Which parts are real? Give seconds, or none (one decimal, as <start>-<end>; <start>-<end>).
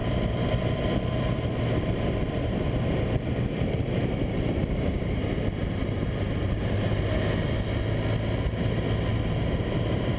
5.0-5.6; 6.9-9.1